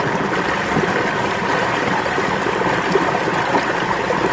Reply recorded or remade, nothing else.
recorded